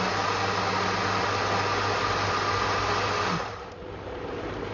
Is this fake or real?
real